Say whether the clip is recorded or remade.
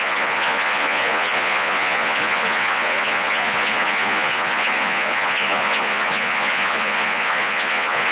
remade